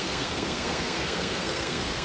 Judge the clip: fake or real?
fake